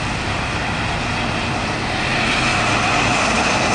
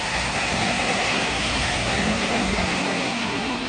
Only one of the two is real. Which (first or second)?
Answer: first